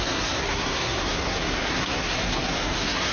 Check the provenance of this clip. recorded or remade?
remade